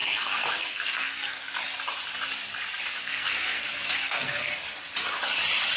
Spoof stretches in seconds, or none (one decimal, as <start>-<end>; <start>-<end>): 0.0-1.6; 3.0-4.5